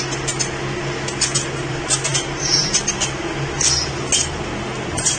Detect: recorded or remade recorded